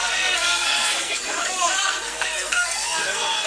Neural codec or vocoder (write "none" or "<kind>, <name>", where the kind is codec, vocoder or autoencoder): codec, SNAC